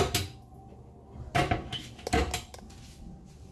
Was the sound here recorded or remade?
recorded